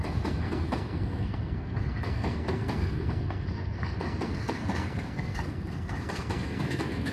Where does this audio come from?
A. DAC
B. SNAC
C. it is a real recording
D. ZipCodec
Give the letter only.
B